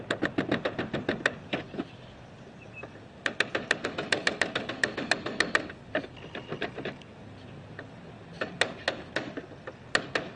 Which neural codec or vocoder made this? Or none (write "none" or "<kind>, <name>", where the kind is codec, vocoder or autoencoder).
none